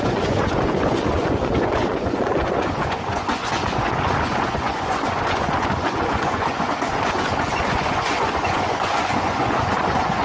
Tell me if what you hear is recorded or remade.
remade